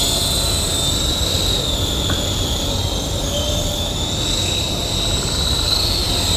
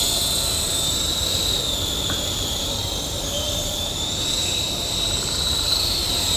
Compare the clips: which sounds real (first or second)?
first